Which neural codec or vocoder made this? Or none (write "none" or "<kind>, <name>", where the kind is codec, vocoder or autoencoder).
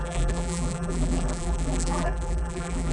vocoder, BigVGAN v2